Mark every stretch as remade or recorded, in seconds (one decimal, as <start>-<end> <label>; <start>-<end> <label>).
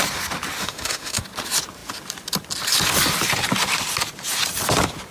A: 0.0-0.6 recorded; 0.6-1.2 remade; 1.2-5.1 recorded